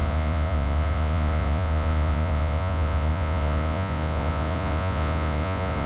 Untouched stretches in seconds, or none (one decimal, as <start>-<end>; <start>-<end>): none